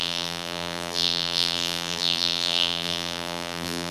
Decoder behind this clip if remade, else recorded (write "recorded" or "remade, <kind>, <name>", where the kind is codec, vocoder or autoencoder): remade, vocoder, BigVGAN v2